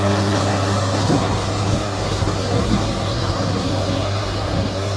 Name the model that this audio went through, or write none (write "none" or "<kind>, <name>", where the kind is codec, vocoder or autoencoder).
codec, SNAC